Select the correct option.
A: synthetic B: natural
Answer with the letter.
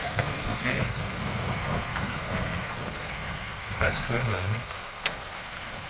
A